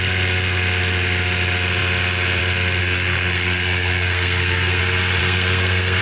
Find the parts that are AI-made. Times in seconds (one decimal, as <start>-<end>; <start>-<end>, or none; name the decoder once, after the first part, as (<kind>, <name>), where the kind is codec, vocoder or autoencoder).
2.8-4.8 (codec, SNAC); 5.2-6.0